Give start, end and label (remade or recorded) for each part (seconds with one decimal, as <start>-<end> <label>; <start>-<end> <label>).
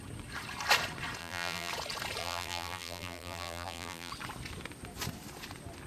0.0-1.2 recorded; 1.2-1.7 remade; 1.7-2.2 recorded; 2.2-4.1 remade; 4.1-5.9 recorded